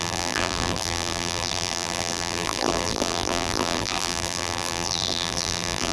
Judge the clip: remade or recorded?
remade